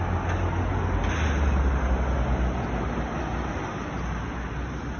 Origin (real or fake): real